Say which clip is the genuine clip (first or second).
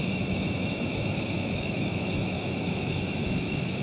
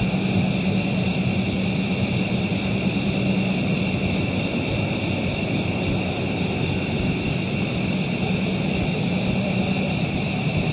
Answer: second